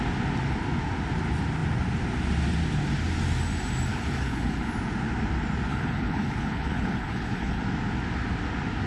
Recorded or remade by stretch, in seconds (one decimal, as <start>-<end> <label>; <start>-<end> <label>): 0.0-3.9 recorded; 3.9-4.7 remade; 4.7-5.7 recorded; 5.7-7.6 remade; 7.6-8.9 recorded